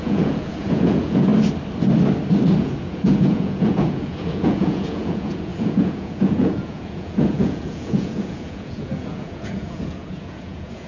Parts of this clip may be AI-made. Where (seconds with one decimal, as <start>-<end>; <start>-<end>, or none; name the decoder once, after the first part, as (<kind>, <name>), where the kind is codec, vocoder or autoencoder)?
0.0-1.3 (vocoder, Vocos); 2.6-10.9

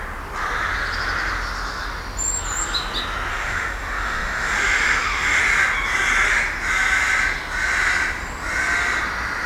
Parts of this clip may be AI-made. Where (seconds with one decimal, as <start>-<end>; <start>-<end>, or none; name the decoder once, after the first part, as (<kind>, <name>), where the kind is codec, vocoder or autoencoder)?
3.3-5.4 (autoencoder, DAC-VAE)

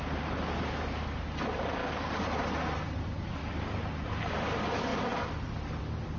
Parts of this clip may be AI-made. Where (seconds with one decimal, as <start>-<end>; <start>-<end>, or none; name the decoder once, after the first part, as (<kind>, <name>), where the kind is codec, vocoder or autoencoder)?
1.8-2.4 (codec, DAC)

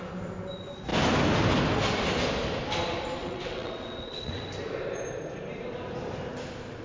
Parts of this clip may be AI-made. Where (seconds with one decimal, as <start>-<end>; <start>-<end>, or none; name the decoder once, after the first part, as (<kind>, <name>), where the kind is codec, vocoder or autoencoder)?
3.2-4.4 (vocoder, WaveNeXt)

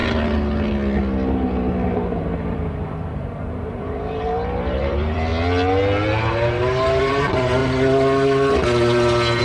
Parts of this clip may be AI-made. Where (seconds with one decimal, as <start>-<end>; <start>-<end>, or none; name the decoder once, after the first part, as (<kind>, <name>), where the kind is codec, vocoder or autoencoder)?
2.2-5.3 (vocoder, BigVGAN v2); 6.2-7.6

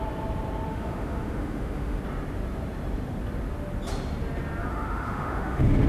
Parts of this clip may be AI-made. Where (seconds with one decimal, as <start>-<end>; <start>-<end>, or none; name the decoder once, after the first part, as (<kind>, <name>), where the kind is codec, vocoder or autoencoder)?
0.7-2.0 (autoencoder, DAC-VAE); 4.7-5.9

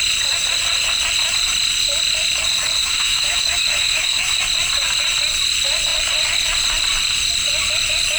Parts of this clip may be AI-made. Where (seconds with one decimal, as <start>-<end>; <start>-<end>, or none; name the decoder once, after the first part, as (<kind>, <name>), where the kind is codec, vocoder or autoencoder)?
2.8-4.4 (autoencoder, DAC-VAE)

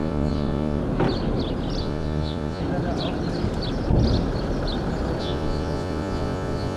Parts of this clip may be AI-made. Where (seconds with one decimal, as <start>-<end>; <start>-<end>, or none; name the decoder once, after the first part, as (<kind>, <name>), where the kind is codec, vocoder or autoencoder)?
0.0-0.8 (vocoder, Vocos); 1.8-2.6; 5.2-6.8